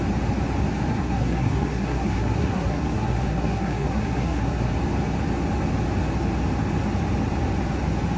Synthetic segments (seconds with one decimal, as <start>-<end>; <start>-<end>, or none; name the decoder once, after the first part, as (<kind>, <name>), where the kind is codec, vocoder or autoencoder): 0.9-4.7 (codec, SNAC)